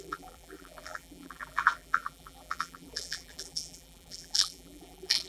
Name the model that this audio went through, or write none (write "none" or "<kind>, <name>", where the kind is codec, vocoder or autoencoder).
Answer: vocoder, BigVGAN v2